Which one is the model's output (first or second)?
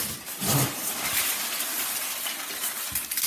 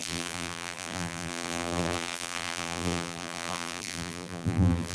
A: second